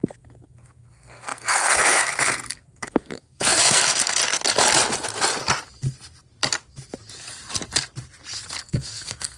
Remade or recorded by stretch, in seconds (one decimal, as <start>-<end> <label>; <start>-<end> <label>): 0.0-4.2 remade; 4.2-8.6 recorded; 8.6-9.4 remade